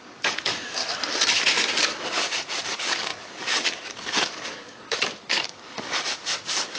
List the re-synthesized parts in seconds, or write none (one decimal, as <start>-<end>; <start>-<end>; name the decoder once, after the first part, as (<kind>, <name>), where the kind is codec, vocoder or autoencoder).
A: 0.0-0.8 (codec, DAC); 1.8-6.8